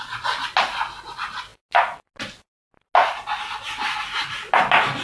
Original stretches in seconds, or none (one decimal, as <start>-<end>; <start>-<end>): 0.0-5.0